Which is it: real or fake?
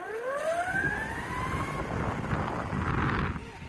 real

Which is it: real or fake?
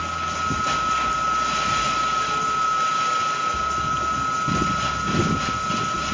real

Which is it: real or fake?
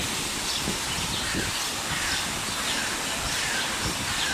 fake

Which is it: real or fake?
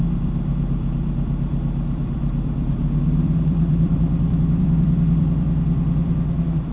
fake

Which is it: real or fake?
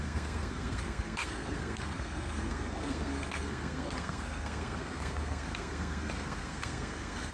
fake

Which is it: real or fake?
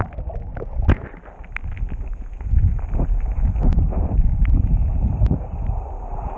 real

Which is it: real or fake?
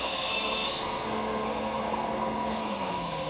fake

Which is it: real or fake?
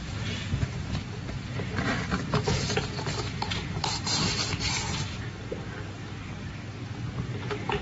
real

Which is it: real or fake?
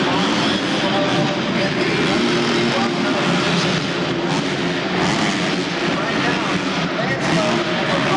real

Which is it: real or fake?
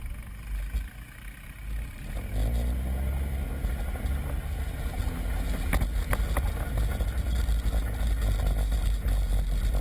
real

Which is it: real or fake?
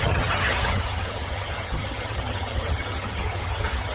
fake